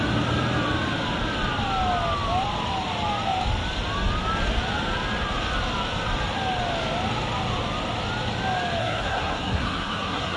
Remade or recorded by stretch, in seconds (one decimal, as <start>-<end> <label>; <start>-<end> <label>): 0.0-8.8 recorded; 8.8-10.4 remade